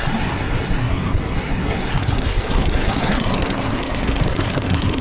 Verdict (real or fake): fake